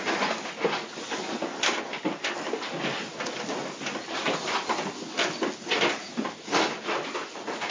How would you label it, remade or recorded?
recorded